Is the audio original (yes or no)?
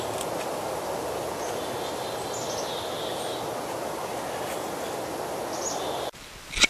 yes